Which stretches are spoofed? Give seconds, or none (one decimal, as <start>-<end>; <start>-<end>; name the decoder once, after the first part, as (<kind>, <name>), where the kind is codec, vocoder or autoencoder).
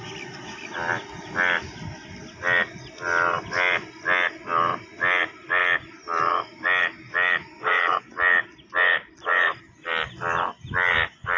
none